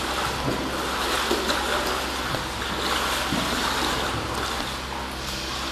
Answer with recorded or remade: recorded